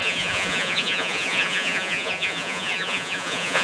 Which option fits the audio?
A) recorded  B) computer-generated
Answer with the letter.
B